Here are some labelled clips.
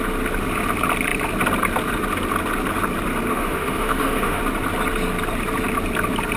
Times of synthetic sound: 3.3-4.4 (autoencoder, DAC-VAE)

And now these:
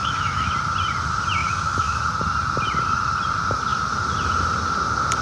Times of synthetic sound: 0.0-0.5 (autoencoder, DAC-VAE); 1.4-2.0

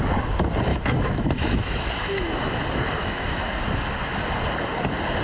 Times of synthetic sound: 0.7-2.6 (autoencoder, DAC-VAE); 3.0-3.5

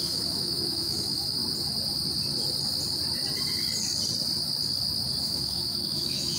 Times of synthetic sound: 0.0-1.4 (autoencoder, DAC-VAE); 5.2-6.4

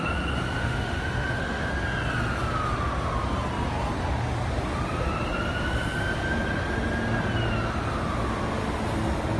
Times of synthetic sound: 0.6-1.7 (autoencoder, DAC-VAE)

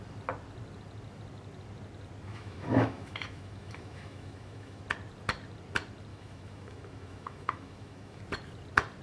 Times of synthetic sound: 2.3-4.8 (autoencoder, DAC-VAE); 6.1-8.2

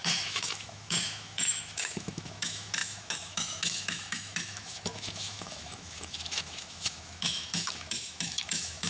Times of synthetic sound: 0.0-8.9 (autoencoder, DAC-VAE)